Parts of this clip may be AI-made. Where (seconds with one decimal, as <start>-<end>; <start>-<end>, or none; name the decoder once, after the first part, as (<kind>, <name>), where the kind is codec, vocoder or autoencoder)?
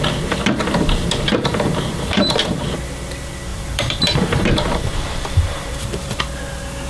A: 1.3-2.6 (vocoder, BigVGAN v2); 3.5-6.2